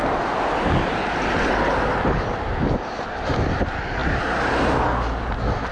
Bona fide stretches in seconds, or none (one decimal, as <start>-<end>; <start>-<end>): 0.0-5.7